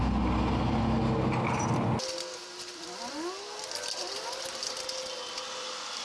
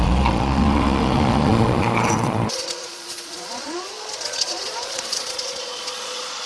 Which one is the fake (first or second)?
second